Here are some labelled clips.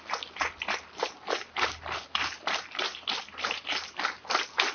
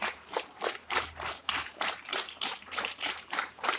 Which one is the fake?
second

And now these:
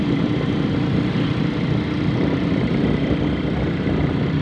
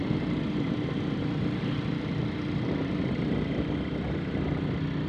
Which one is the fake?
first